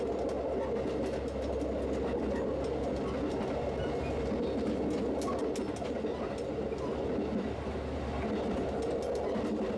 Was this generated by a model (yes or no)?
no